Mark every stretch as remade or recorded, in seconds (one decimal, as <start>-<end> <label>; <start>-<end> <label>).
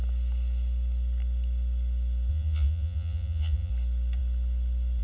0.0-2.3 recorded; 2.3-3.7 remade; 3.7-5.0 recorded